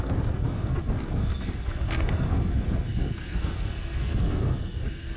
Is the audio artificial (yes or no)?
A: yes